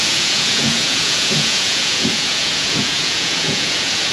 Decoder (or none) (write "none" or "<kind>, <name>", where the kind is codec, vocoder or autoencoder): vocoder, Vocos